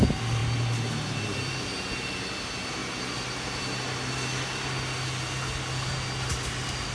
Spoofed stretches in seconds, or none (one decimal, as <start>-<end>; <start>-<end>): none